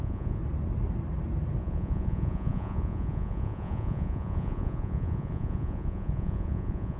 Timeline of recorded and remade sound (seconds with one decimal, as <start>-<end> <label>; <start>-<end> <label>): 0.0-0.4 remade; 0.4-1.6 recorded; 1.6-7.0 remade